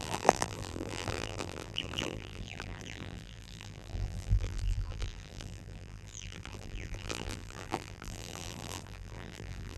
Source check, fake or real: fake